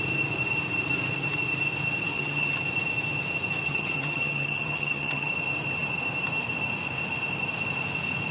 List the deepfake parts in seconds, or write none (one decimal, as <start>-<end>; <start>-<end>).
2.1-2.6; 3.7-5.3